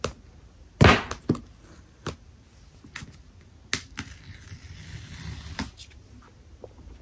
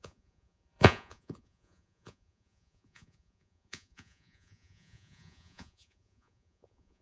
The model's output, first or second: second